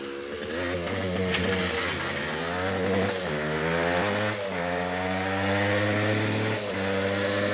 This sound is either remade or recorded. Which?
recorded